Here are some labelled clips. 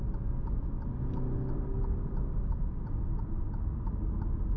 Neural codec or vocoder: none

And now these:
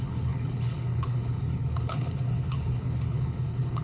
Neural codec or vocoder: codec, HILCodec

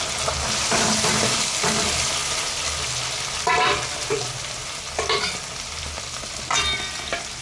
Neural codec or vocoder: none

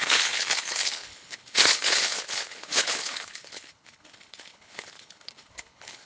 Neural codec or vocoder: codec, HILCodec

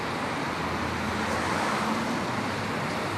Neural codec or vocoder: none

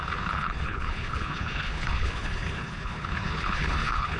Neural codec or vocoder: codec, HILCodec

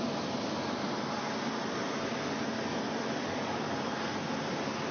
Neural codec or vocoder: none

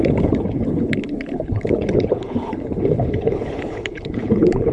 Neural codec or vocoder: codec, HILCodec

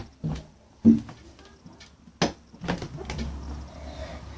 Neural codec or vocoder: none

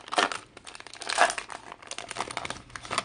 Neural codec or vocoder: none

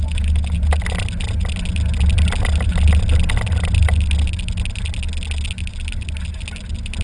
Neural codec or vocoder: none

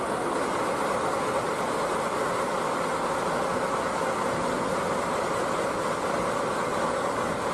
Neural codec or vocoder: none